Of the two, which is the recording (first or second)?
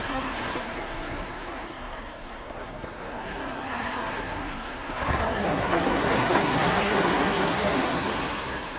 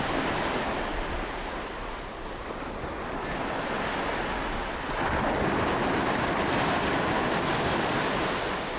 second